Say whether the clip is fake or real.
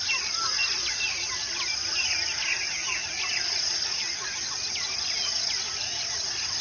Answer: real